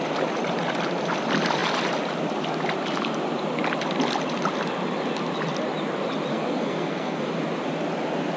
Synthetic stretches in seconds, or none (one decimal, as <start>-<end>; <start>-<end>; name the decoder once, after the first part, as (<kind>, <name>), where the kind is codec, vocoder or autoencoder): 6.3-7.3 (codec, SNAC)